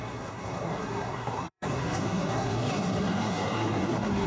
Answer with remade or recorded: remade